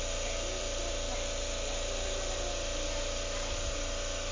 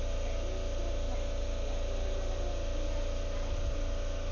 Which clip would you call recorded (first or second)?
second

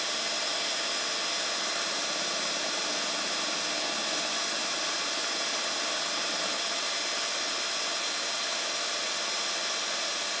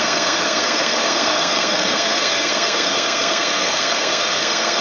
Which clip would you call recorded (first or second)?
first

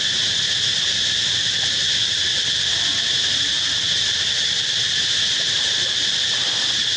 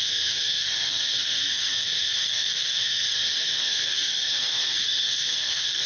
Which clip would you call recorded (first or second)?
first